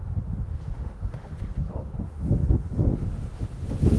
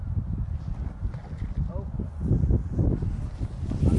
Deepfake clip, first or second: first